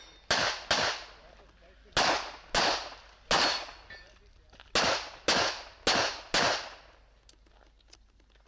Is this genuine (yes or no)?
yes